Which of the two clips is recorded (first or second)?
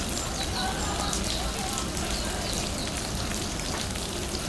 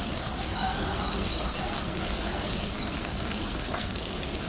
first